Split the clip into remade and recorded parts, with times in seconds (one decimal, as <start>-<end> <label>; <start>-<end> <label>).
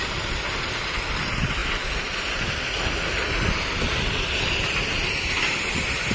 0.0-6.1 recorded